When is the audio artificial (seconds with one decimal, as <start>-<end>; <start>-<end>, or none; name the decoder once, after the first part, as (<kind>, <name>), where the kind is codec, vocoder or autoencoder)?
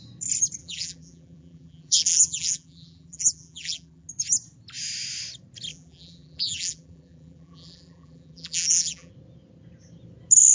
0.6-4.1 (vocoder, BigVGAN v2); 5.7-9.1